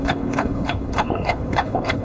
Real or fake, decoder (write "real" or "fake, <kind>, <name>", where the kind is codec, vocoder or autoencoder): fake, codec, HILCodec